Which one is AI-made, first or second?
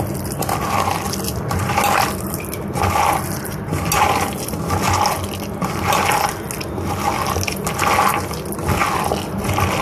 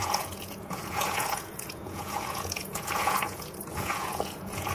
second